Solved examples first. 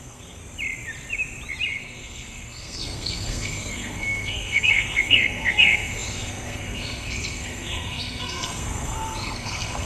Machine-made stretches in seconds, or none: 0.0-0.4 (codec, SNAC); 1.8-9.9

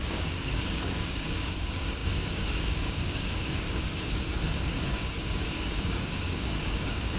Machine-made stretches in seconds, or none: 0.0-7.2 (codec, DAC)

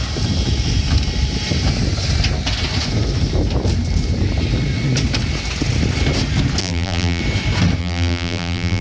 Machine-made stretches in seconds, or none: 6.6-7.2 (vocoder, BigVGAN v2); 7.8-8.8

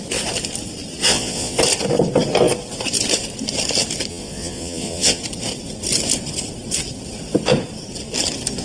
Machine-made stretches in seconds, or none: 1.0-1.6 (vocoder, Vocos); 4.1-5.2

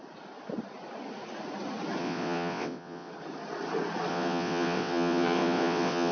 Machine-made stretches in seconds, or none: 2.0-3.1 (vocoder, WaveNeXt); 4.1-6.1